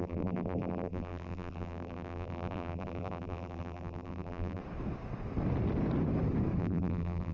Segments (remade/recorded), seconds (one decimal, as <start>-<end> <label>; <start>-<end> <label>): 0.0-4.6 remade; 4.6-6.6 recorded; 6.6-7.3 remade